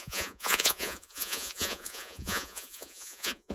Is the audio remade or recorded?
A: remade